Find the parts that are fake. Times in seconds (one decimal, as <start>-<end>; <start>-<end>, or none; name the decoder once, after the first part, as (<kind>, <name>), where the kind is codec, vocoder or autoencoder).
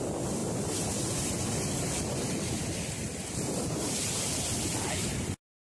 none